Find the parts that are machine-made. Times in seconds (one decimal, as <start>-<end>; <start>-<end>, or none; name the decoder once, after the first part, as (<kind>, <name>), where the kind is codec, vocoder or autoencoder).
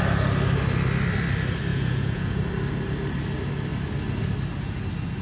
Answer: 1.7-2.4 (vocoder, Vocos)